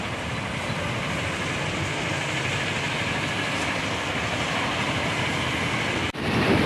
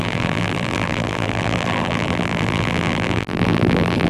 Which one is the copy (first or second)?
second